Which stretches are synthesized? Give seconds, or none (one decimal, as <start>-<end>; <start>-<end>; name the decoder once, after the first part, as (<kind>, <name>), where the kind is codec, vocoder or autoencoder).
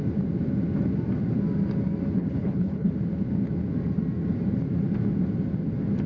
2.2-2.9 (codec, HILCodec)